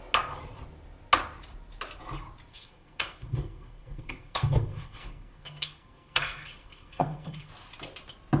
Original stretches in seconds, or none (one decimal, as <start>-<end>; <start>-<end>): 0.0-2.5; 7.5-8.4